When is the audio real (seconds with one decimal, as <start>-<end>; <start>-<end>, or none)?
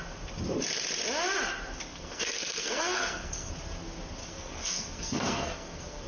0.0-1.9; 3.5-4.2